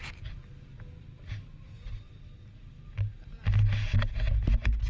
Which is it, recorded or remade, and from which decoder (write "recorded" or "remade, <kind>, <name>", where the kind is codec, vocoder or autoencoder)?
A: recorded